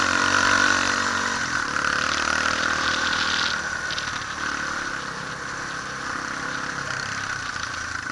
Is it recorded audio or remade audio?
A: recorded